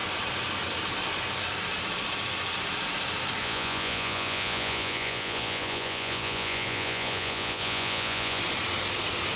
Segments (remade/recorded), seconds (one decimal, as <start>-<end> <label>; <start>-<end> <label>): 0.0-3.4 recorded; 3.4-8.4 remade; 8.4-9.4 recorded